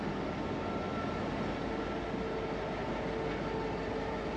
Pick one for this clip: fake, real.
real